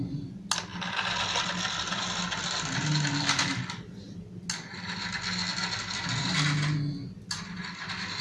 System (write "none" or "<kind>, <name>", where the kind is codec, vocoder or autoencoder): none